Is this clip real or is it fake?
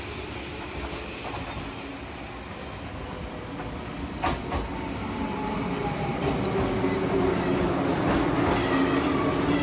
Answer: real